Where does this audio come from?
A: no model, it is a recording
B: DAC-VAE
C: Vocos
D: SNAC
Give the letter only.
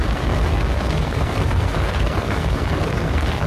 D